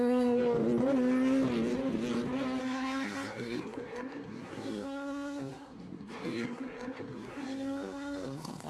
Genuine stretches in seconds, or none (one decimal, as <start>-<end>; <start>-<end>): 0.4-2.6